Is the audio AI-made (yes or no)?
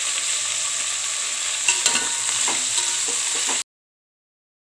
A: no